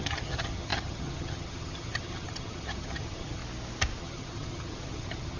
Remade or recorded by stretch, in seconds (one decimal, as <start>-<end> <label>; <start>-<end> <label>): 0.0-3.4 remade; 3.4-4.0 recorded; 4.0-5.4 remade

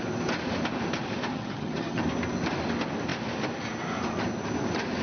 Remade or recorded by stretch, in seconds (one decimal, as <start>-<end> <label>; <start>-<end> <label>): 0.0-1.3 recorded; 1.3-2.0 remade; 2.0-5.0 recorded